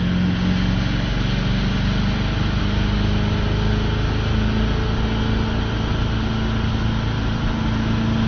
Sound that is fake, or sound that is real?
real